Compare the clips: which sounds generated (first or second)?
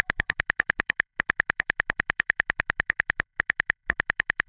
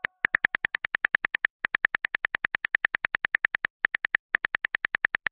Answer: first